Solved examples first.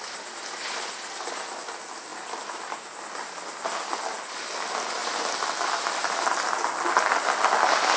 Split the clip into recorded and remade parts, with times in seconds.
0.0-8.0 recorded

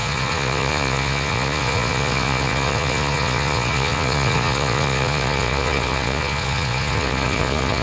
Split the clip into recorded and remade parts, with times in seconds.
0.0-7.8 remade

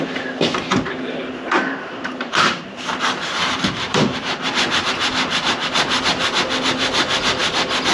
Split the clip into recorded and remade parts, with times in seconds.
0.0-0.5 recorded; 0.5-4.9 remade; 4.9-7.9 recorded

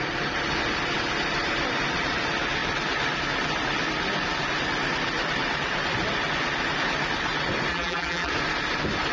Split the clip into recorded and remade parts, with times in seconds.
0.0-7.7 recorded; 7.7-8.3 remade; 8.3-9.1 recorded

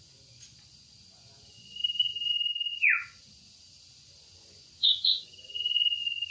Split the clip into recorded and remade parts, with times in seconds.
0.0-1.8 remade; 1.8-2.7 recorded; 2.7-6.3 remade

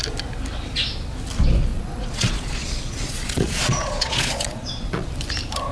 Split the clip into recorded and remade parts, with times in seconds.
0.0-1.7 recorded; 1.7-5.1 remade; 5.1-5.7 recorded